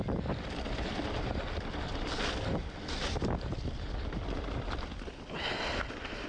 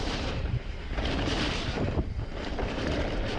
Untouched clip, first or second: first